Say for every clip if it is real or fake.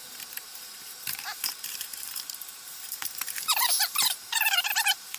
fake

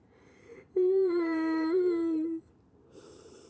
fake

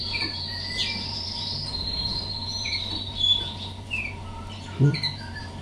fake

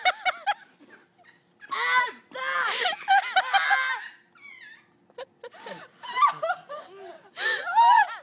real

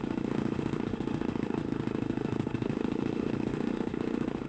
fake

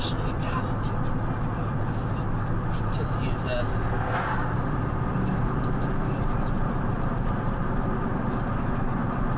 real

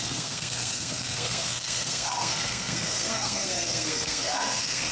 fake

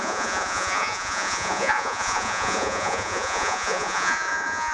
fake